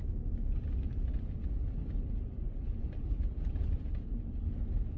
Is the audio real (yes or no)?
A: yes